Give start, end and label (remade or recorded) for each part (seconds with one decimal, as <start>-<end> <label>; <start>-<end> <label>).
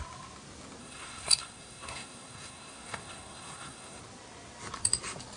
0.0-0.8 recorded; 0.8-4.0 remade; 4.0-5.4 recorded